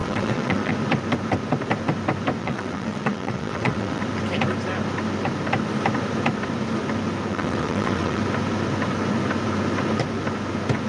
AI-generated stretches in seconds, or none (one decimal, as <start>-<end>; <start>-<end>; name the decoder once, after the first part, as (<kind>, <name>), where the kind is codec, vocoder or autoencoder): 0.0-0.7 (vocoder, WaveNeXt); 2.4-4.0; 7.3-8.2